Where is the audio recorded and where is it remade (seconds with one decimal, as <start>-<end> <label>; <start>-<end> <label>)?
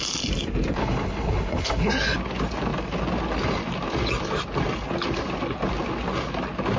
0.0-0.8 recorded; 0.8-1.9 remade; 1.9-6.8 recorded